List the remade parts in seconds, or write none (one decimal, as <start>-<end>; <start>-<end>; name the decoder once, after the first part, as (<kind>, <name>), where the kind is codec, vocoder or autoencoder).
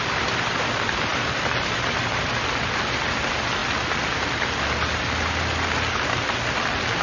0.0-7.0 (vocoder, BigVGAN v2)